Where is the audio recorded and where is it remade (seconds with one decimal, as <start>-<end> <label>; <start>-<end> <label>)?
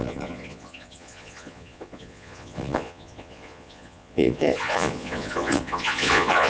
0.0-6.5 remade